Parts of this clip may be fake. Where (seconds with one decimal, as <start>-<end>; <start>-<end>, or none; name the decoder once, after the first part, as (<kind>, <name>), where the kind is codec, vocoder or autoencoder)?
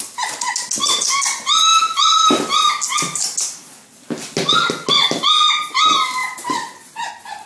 1.7-2.7 (vocoder, BigVGAN v2); 6.2-7.1